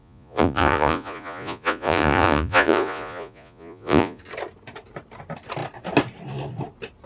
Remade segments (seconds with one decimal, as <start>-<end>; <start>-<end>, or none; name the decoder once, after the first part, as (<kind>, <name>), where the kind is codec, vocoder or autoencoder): 0.0-4.2 (vocoder, Vocos)